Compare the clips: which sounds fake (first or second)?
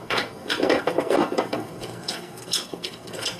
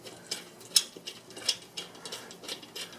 first